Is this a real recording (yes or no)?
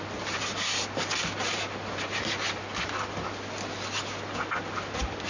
yes